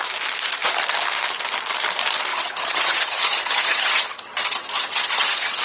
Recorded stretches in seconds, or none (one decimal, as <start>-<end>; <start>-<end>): 0.0-2.3

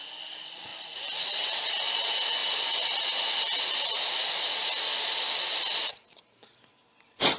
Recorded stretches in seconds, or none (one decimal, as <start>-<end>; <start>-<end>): 0.0-7.4

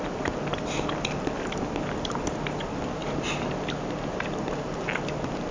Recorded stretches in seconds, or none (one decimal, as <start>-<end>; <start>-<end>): 0.0-5.5